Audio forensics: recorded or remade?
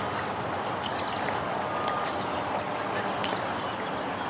recorded